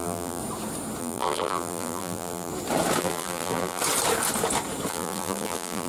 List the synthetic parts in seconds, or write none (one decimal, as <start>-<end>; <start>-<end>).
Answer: 0.0-0.4; 1.0-2.5; 3.0-3.8; 4.9-5.9